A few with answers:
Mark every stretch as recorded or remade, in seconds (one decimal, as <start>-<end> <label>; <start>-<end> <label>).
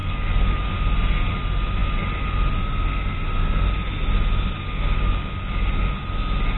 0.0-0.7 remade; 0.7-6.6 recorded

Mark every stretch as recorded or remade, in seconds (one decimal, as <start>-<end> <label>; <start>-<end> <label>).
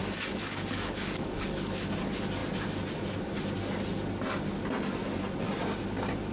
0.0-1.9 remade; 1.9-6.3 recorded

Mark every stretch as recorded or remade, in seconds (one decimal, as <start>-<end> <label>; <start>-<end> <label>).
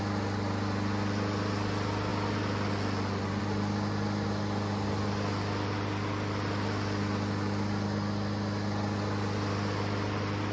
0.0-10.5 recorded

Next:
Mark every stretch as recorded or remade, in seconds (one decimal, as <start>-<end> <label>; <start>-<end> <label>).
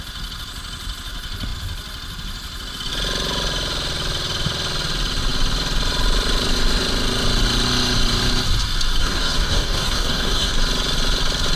0.0-9.0 recorded; 9.0-10.6 remade; 10.6-11.6 recorded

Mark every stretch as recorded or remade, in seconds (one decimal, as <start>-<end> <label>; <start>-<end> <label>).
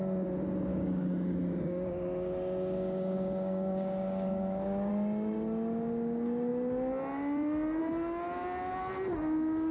0.0-0.7 recorded; 0.7-4.9 remade; 4.9-9.7 recorded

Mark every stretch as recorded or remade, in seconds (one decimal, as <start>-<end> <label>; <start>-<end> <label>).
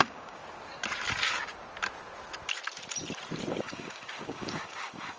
0.0-0.4 remade; 0.4-3.5 recorded; 3.5-5.2 remade